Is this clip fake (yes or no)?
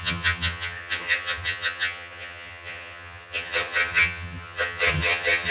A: yes